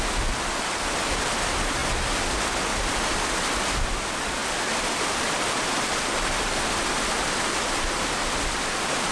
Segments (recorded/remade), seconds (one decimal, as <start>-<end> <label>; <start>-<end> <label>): 0.0-9.1 recorded